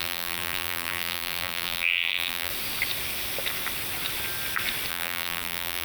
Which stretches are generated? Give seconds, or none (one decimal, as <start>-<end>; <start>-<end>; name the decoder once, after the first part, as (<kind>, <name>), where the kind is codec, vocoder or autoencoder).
0.0-2.5 (vocoder, BigVGAN v2); 4.9-5.8